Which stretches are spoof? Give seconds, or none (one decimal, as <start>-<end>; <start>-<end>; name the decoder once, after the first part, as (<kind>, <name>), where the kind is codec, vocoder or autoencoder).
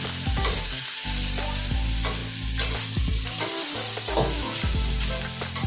none